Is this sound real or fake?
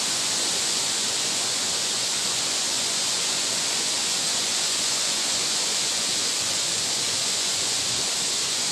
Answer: fake